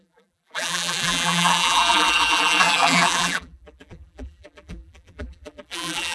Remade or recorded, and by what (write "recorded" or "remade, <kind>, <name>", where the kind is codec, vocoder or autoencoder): remade, vocoder, BigVGAN v2